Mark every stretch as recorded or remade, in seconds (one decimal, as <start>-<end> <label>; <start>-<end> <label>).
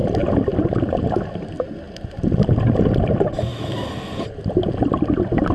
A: 0.0-5.5 recorded